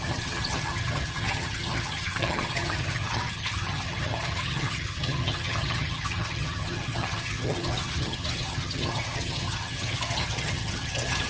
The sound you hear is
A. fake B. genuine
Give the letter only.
A